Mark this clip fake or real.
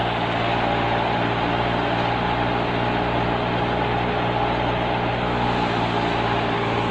real